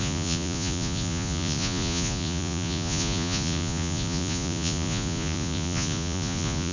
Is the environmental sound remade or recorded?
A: remade